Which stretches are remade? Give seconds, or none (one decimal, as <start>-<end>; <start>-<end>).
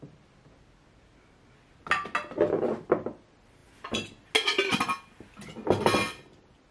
none